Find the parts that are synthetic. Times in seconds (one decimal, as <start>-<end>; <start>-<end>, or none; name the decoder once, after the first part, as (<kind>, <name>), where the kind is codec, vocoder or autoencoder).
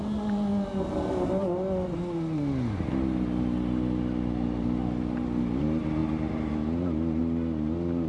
none